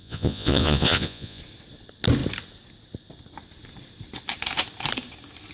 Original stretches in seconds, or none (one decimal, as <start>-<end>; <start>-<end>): 1.4-5.5